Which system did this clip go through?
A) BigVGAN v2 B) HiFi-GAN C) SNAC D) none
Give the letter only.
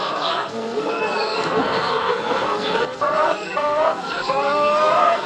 C